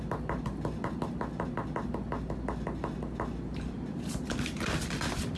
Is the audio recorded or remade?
recorded